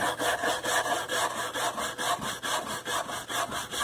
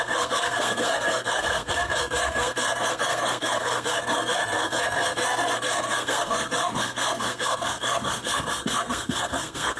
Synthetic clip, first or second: second